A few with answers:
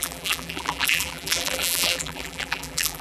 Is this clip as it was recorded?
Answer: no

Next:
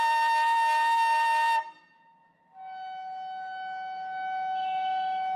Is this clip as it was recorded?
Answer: yes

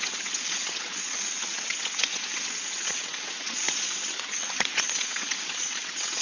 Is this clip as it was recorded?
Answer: no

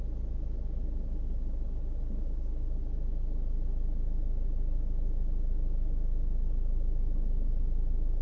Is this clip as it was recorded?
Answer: yes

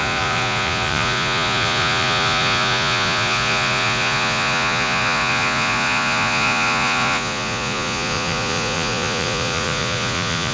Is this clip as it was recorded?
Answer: no